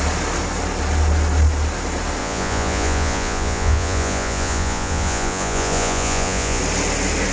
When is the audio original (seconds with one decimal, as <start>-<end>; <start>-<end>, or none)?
0.0-2.2; 6.6-7.3